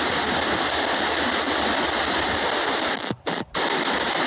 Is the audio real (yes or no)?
no